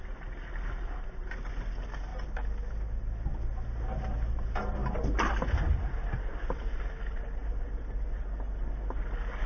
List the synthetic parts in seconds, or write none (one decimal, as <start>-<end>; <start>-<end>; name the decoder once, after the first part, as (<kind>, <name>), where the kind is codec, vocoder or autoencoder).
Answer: none